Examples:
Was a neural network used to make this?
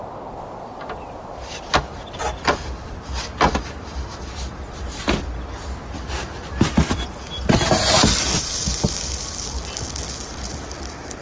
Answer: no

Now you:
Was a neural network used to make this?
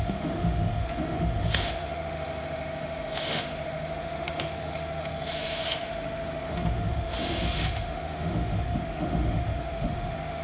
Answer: yes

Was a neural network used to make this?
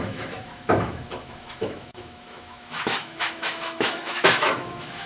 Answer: yes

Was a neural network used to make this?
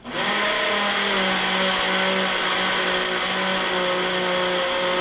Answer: no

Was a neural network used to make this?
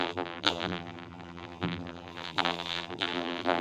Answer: yes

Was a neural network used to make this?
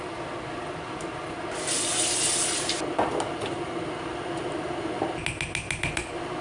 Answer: no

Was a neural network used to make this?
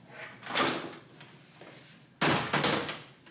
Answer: no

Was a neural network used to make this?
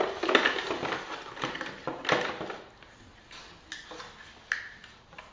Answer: no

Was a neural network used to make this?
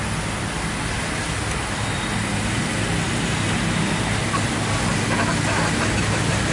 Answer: no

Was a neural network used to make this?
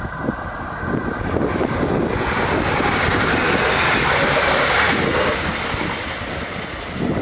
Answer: no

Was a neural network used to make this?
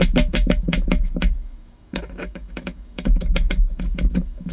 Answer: yes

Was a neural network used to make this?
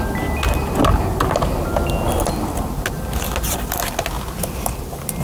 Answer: no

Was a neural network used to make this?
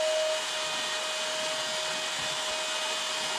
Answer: no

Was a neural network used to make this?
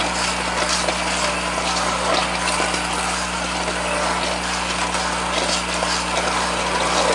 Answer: no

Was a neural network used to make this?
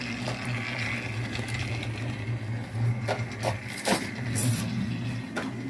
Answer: no